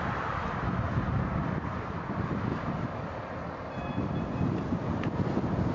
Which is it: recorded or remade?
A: recorded